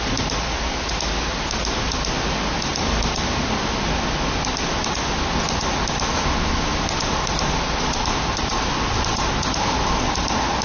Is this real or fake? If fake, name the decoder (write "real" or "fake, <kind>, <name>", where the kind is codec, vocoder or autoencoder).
real